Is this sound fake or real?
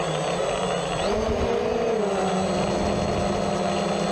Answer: real